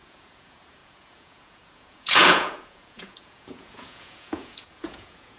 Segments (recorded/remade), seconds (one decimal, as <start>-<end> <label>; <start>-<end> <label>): 0.0-5.4 remade